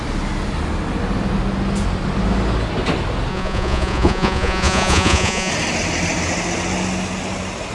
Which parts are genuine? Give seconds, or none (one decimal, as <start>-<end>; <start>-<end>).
0.0-3.3; 5.5-7.7